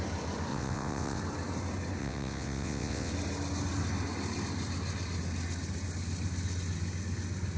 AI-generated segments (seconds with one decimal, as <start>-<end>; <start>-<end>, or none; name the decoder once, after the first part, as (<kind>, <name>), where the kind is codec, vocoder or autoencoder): 0.5-1.2 (vocoder, WaveNeXt); 2.0-3.1